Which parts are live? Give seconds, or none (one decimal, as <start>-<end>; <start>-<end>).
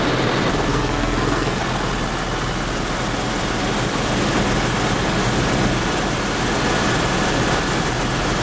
0.0-0.7; 1.6-8.4